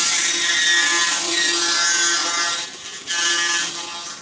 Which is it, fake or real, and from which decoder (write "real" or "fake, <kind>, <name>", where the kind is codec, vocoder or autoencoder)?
real